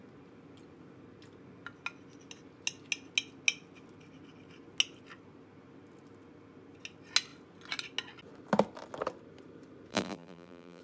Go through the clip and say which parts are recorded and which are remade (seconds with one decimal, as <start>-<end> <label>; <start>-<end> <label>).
0.0-9.9 recorded; 9.9-10.8 remade